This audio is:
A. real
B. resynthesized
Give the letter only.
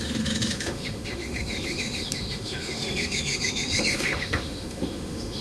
B